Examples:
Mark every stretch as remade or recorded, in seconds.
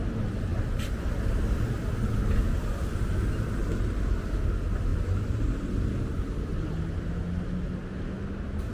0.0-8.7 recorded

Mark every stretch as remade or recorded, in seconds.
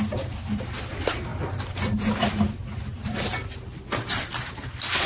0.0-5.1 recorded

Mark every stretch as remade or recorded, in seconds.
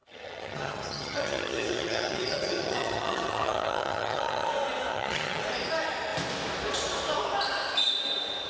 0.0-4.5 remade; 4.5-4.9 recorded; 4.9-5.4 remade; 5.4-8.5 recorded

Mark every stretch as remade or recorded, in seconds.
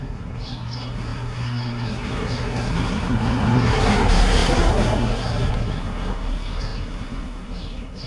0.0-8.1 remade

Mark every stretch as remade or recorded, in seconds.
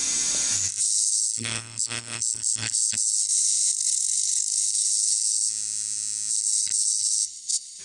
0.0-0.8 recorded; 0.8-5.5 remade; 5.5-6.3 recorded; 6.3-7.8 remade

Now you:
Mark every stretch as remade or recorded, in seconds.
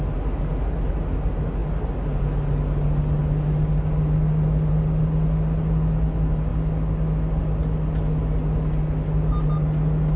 0.0-10.2 recorded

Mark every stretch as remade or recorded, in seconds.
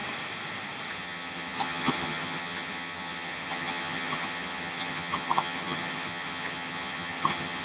0.0-0.9 recorded; 0.9-7.6 remade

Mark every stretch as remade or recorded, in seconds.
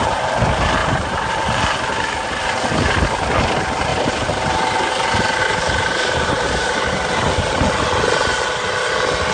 0.0-0.8 recorded; 0.8-1.8 remade; 1.8-3.9 recorded; 3.9-6.9 remade; 6.9-9.3 recorded